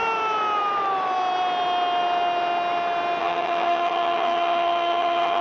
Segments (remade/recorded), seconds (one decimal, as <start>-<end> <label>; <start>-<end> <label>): 0.0-3.2 recorded; 3.2-5.4 remade